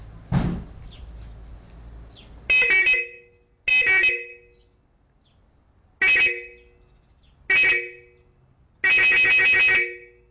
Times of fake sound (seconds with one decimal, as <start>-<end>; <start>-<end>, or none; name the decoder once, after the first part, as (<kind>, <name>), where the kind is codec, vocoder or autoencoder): none